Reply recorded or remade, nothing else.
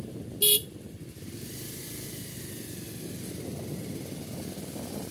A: recorded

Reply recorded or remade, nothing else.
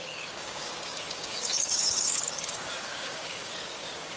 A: remade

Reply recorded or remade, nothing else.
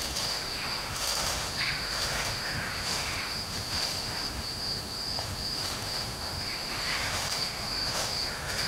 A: remade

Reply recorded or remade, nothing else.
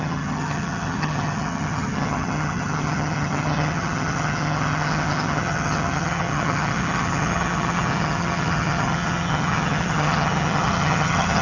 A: remade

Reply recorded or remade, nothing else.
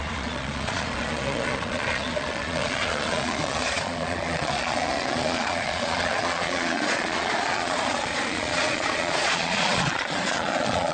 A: remade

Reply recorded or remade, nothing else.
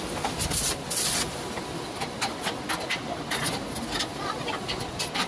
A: recorded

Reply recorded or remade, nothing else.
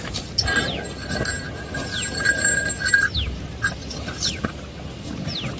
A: recorded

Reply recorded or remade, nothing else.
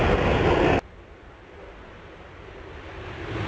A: recorded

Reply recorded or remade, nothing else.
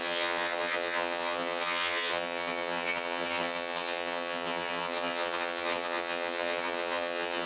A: remade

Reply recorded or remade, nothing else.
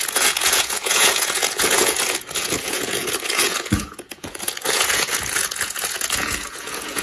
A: remade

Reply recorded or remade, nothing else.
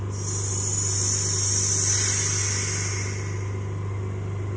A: recorded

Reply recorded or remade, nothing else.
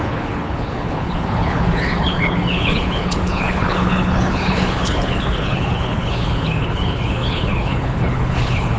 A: remade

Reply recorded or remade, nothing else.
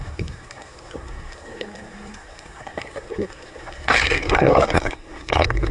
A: remade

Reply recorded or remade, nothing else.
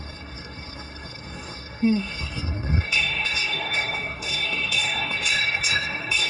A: remade